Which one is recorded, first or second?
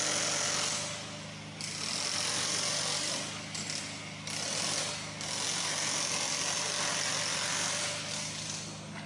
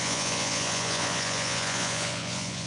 first